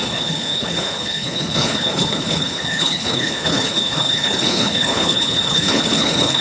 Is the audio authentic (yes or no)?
no